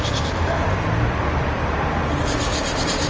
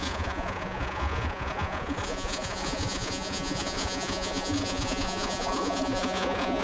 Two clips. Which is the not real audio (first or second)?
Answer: second